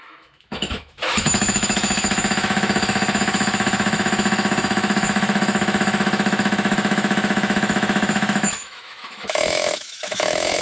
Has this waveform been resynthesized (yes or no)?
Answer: yes